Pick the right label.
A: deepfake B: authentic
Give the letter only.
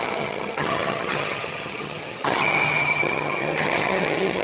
A